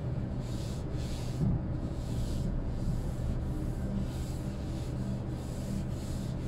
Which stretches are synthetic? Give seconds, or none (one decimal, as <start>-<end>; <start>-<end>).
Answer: 0.0-3.4